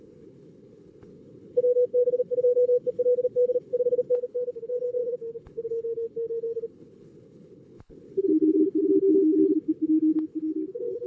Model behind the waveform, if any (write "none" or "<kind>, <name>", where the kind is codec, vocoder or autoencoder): codec, HILCodec